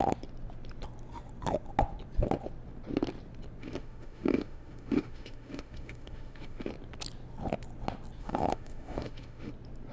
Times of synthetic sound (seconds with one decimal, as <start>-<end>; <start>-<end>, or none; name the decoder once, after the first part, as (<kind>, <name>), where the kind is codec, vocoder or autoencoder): 3.6-6.7 (autoencoder, DAC-VAE); 8.2-9.5